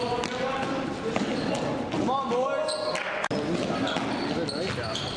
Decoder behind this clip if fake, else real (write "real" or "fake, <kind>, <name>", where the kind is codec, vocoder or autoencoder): real